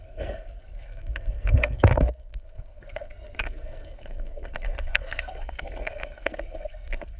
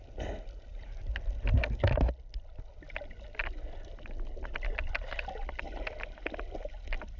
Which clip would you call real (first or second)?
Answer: second